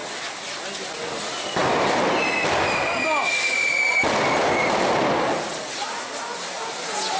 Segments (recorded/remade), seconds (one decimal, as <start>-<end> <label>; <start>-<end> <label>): 0.0-7.2 recorded